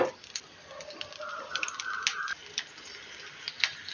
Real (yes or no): yes